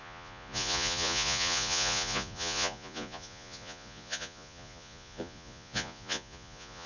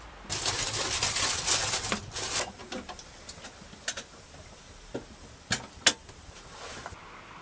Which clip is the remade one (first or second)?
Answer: first